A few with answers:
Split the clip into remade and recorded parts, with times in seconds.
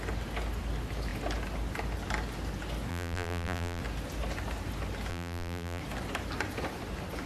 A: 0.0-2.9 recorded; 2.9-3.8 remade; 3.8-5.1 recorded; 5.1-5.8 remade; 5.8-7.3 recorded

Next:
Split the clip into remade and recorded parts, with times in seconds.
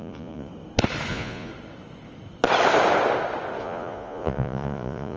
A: 0.0-0.5 remade; 0.5-1.1 recorded; 1.1-1.5 remade; 1.5-3.6 recorded; 3.6-5.2 remade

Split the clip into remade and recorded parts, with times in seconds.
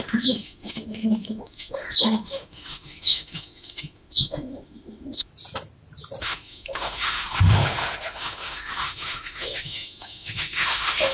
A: 0.0-5.3 remade; 5.3-6.2 recorded; 6.2-11.1 remade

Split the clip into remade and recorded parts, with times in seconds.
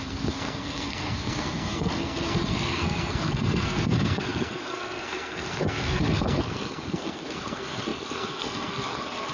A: 0.0-9.3 remade